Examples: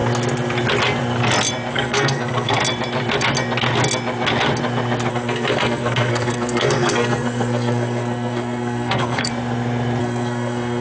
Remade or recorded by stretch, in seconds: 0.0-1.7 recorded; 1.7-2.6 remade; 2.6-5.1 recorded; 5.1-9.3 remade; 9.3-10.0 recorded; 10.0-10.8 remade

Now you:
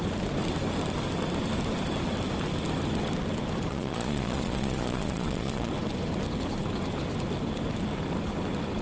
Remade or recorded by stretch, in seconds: 0.0-3.7 recorded; 3.7-5.7 remade; 5.7-8.8 recorded

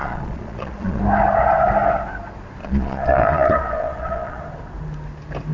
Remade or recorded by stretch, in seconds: 0.0-1.0 remade; 1.0-2.6 recorded; 2.6-4.4 remade; 4.4-5.5 recorded

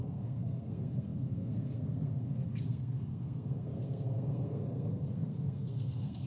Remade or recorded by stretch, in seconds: 0.0-6.3 remade

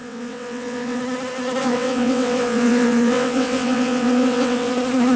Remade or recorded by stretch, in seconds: 0.0-1.0 remade; 1.0-1.6 recorded; 1.6-4.7 remade; 4.7-5.2 recorded

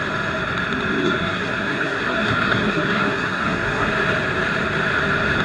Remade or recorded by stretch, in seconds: 0.0-1.0 recorded; 1.0-3.9 remade; 3.9-5.4 recorded

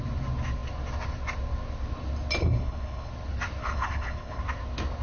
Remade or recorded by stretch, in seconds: 0.0-2.4 recorded; 2.4-3.1 remade; 3.1-3.6 recorded; 3.6-4.4 remade; 4.4-5.0 recorded